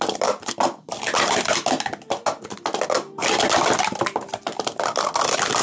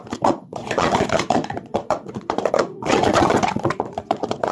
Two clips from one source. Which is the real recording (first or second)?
first